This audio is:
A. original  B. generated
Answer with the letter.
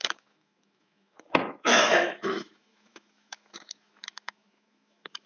B